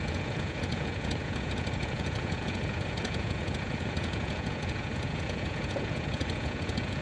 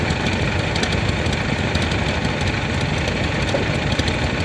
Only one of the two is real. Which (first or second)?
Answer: second